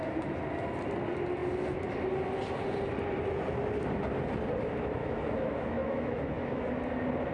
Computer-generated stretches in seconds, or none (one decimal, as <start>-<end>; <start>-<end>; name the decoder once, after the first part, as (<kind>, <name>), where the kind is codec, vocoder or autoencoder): 5.0-6.7 (autoencoder, DAC-VAE)